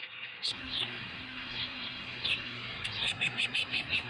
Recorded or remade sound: remade